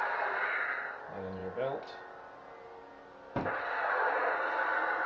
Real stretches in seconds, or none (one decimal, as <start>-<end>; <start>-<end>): 0.0-5.1